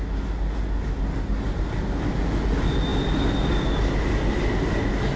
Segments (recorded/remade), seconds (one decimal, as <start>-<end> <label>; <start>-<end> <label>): 0.0-5.2 recorded